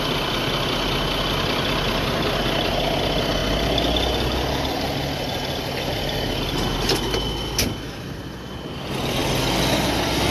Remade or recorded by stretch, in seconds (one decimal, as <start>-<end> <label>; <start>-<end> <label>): 0.0-10.3 recorded